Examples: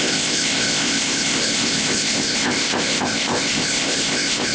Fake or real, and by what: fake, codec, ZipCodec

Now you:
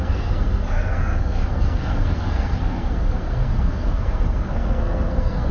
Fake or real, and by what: fake, codec, SNAC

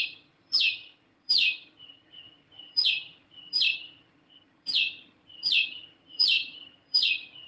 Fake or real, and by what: fake, vocoder, HiFi-GAN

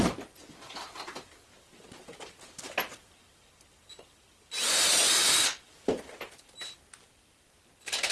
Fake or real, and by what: real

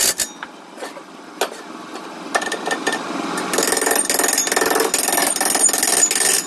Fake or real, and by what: real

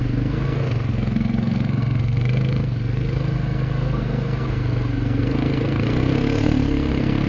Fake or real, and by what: fake, codec, SNAC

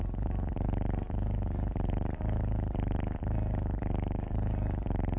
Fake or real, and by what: real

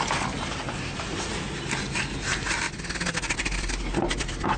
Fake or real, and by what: real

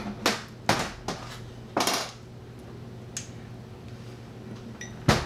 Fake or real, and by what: real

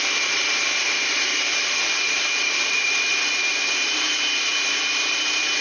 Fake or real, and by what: fake, vocoder, BigVGAN v2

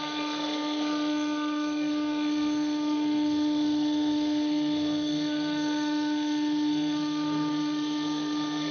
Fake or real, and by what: fake, codec, SNAC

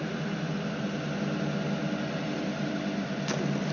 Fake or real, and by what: real